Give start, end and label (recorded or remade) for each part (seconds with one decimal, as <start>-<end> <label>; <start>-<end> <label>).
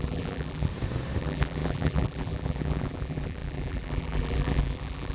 0.0-0.7 remade; 0.7-1.2 recorded; 1.2-5.1 remade